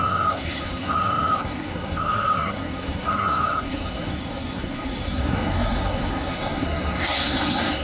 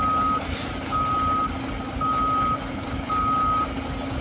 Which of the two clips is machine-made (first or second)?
first